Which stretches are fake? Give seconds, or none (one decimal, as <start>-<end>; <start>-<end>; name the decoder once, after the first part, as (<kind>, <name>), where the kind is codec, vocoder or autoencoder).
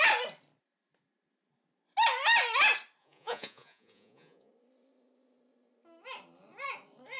3.0-4.5 (vocoder, Vocos)